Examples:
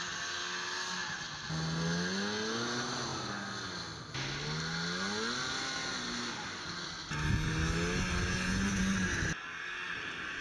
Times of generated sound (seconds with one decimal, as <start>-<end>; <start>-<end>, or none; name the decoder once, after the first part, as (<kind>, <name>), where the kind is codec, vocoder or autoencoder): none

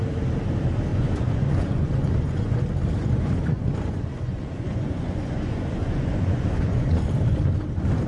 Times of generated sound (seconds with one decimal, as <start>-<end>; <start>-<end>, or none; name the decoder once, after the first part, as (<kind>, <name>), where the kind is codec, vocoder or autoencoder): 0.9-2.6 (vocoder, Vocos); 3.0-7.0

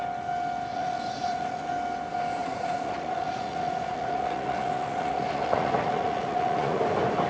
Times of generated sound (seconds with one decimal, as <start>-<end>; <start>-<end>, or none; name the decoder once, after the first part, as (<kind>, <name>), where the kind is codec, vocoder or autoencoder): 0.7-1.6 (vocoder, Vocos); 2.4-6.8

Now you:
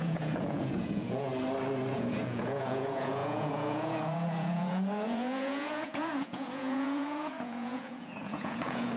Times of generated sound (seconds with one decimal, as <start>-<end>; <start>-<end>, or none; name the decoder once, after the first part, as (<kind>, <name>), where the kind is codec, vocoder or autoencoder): 0.0-1.3 (vocoder, Vocos); 1.9-9.0